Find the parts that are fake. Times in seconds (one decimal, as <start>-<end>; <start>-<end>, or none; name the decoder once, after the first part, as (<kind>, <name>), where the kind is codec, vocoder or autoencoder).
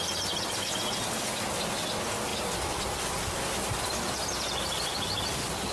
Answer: none